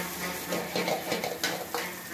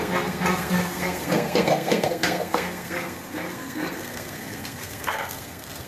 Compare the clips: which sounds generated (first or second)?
second